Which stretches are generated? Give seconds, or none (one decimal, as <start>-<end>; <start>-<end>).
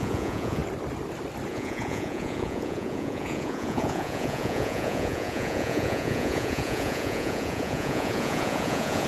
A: 0.0-0.6; 1.5-9.1